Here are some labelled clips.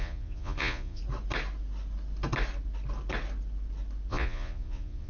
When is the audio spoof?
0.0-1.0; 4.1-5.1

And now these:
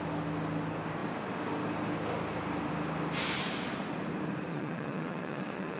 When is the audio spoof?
4.5-5.8

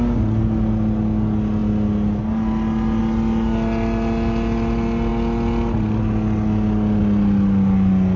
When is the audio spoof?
none

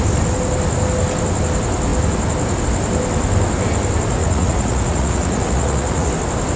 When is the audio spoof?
4.2-6.1